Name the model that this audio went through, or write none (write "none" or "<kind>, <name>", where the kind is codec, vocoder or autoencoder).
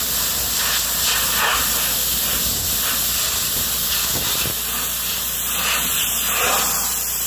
none